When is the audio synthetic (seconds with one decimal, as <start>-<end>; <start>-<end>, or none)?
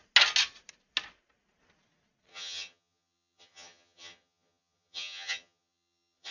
2.3-6.3